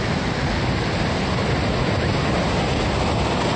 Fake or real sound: real